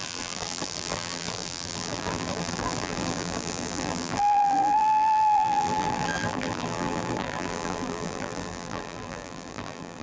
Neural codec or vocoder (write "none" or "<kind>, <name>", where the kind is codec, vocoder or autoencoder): vocoder, BigVGAN v2